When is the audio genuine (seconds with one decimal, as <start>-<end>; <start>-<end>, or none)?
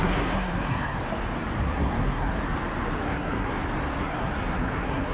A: 1.0-1.6; 2.3-3.0; 3.5-4.0